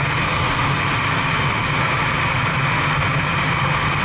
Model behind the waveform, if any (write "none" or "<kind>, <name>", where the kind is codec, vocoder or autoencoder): none